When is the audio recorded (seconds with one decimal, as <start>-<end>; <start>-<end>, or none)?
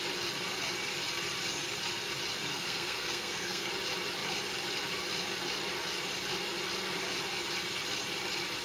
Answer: 0.0-2.5; 3.7-8.6